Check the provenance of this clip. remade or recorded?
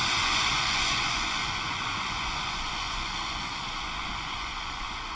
remade